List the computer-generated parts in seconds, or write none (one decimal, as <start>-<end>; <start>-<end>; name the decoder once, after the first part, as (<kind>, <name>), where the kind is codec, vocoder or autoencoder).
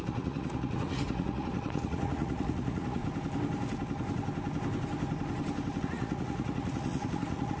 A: 0.0-3.0 (vocoder, Vocos); 5.8-7.6